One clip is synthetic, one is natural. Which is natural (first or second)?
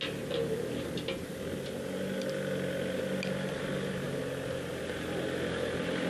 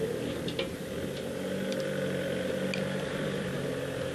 first